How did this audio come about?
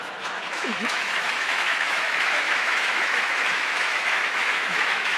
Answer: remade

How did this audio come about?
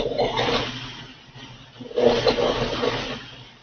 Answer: recorded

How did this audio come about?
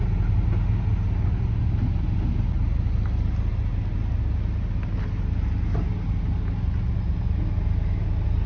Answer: recorded